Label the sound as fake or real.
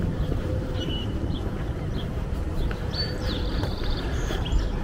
fake